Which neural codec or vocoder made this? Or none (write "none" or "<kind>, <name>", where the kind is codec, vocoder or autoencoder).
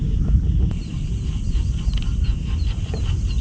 none